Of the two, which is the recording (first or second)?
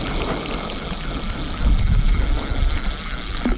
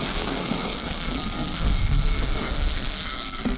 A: first